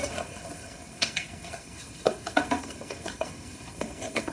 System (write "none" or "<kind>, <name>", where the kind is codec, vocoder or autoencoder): codec, SNAC